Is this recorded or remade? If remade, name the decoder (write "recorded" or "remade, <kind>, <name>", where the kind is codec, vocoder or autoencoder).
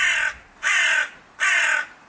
recorded